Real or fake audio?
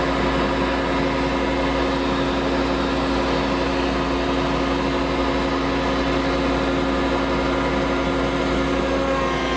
real